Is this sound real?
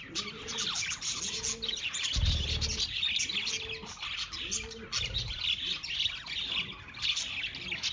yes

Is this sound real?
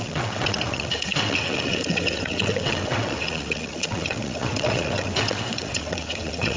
no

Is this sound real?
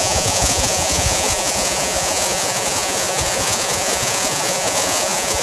no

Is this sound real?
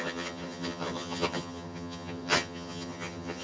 no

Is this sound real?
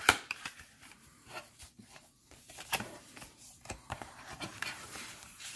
no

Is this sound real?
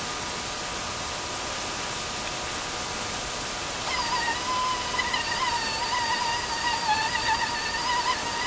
yes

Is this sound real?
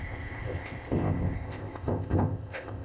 no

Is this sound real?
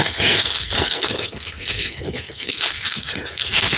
no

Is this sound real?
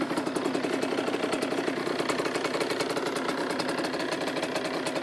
yes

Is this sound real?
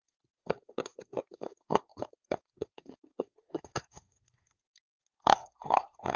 no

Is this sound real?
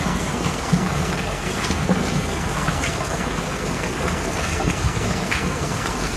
no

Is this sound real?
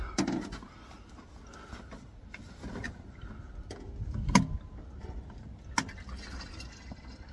yes